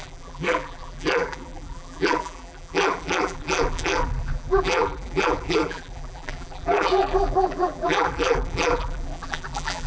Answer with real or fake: fake